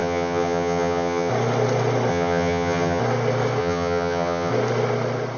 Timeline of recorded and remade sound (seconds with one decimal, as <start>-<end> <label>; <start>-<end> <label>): 0.0-1.3 remade; 1.3-2.1 recorded; 2.1-3.0 remade; 3.0-3.6 recorded; 3.6-4.5 remade; 4.5-5.4 recorded